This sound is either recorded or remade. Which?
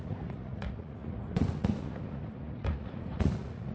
remade